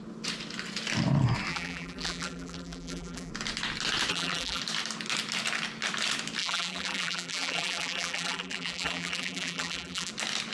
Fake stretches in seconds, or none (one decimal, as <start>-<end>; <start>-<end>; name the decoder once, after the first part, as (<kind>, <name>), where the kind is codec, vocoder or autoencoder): 1.5-3.3 (vocoder, BigVGAN v2); 4.1-4.6; 6.4-10.1